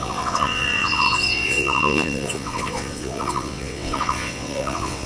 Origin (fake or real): fake